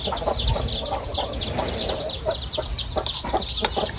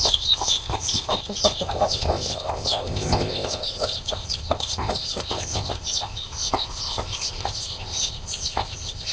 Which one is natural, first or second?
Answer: first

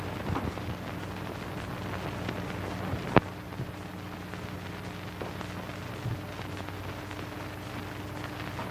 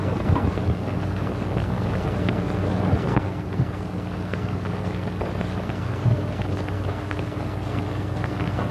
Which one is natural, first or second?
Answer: first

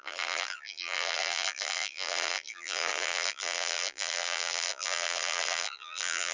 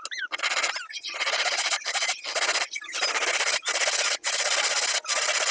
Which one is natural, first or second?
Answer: second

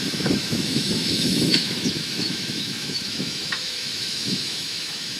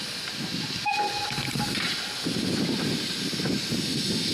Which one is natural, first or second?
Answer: second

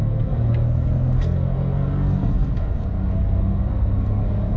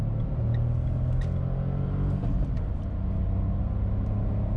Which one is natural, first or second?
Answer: second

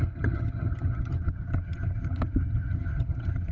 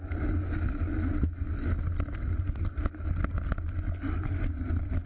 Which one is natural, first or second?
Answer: second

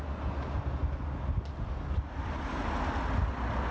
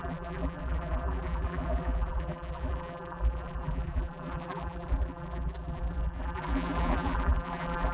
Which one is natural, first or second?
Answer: first